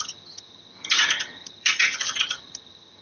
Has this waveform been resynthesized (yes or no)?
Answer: yes